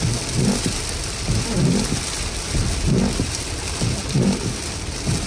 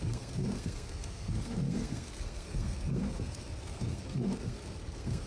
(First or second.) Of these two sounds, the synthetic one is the second